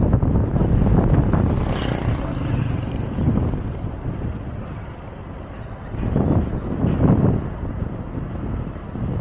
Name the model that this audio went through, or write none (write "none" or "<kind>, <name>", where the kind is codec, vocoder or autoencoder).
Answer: none